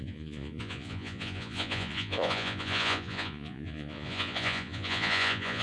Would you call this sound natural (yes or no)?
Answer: no